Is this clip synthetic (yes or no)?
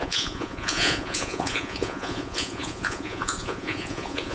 yes